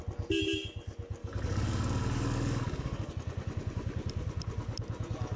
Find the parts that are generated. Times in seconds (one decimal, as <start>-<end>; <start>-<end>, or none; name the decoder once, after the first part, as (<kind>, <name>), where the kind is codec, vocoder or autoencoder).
1.2-3.1 (codec, DAC)